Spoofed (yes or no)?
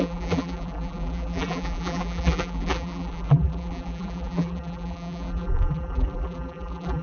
yes